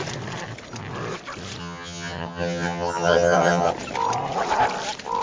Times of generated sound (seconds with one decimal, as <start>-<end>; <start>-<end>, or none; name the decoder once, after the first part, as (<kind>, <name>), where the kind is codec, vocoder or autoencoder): 1.6-3.7 (vocoder, HiFi-GAN)